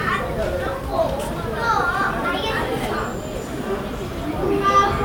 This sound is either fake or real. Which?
real